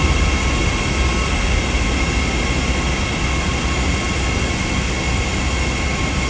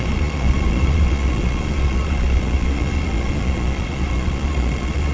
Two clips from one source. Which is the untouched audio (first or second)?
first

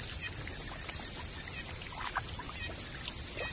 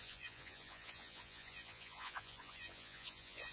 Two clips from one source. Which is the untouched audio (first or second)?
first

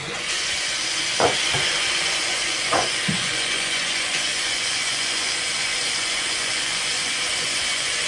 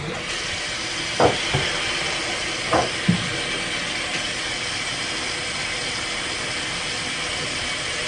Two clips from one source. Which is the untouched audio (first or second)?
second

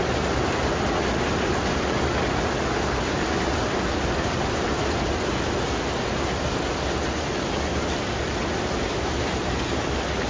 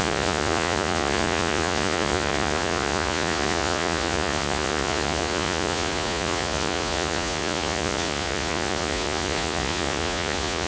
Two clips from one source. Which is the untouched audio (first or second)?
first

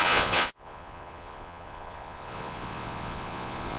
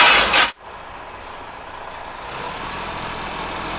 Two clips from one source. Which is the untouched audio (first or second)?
second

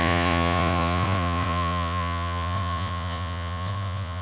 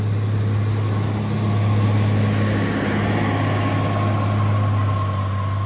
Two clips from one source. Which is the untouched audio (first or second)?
second